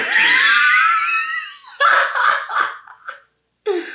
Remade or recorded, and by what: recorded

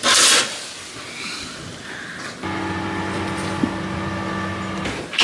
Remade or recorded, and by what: recorded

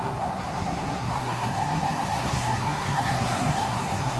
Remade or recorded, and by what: remade, codec, SNAC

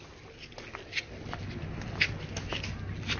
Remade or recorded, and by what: recorded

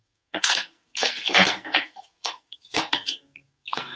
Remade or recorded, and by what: remade, codec, SNAC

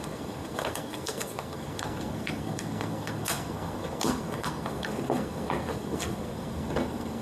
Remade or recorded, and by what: remade, codec, SNAC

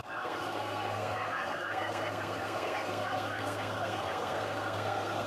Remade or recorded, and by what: remade, codec, SNAC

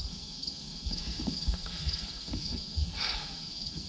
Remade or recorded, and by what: remade, codec, SNAC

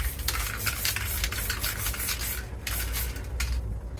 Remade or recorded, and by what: recorded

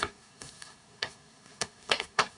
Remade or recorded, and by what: remade, codec, SNAC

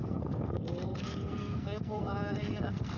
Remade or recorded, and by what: remade, codec, SNAC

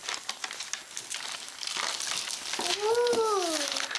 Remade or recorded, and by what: recorded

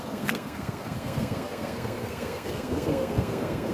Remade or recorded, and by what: remade, codec, SNAC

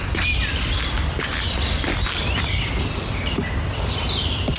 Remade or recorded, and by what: recorded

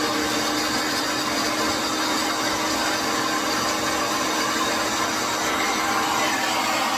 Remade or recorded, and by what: recorded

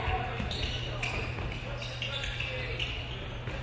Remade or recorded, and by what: recorded